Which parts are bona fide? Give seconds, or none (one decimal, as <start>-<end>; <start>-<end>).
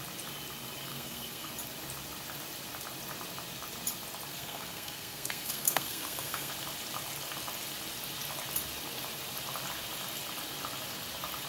0.0-0.9; 1.5-4.3; 6.5-11.5